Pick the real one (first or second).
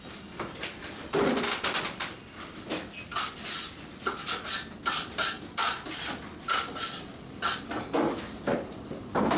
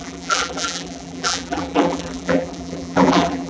first